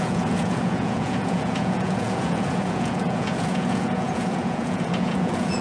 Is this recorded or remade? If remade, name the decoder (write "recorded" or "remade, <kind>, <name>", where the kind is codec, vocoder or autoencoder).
remade, vocoder, Vocos